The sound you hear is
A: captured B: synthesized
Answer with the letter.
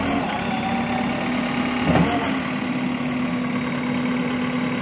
A